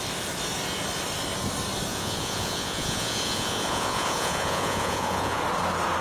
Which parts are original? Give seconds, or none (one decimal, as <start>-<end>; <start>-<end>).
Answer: 0.0-1.9; 5.4-6.0